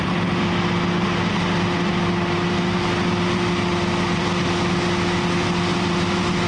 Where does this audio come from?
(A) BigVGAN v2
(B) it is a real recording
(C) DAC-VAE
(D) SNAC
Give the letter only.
A